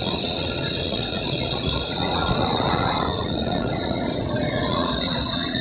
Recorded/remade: remade